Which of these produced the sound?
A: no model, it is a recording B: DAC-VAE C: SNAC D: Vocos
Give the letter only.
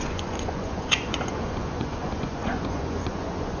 D